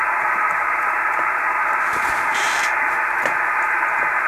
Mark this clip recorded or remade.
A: remade